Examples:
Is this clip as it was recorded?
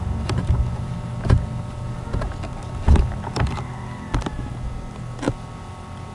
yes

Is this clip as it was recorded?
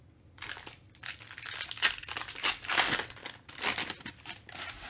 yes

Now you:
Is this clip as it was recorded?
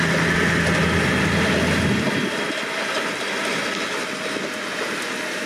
yes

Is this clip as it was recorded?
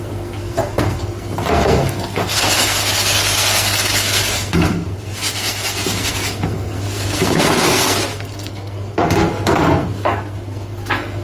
no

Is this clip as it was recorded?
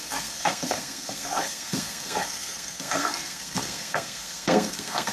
no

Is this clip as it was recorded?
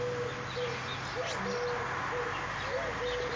yes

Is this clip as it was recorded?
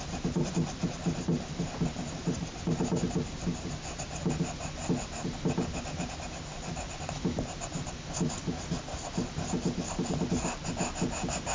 yes